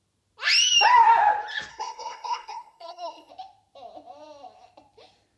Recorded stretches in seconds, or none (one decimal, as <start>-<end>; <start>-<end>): 0.0-1.7; 3.3-5.4

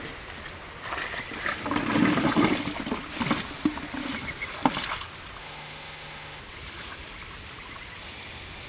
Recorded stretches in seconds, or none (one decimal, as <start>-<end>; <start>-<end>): 0.0-5.4; 6.4-8.7

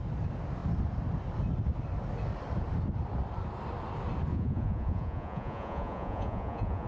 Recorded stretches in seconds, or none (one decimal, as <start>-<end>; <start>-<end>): 0.0-4.3